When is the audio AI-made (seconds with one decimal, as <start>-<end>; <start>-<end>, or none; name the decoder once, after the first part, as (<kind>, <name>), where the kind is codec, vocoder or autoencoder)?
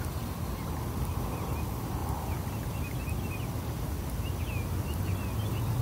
none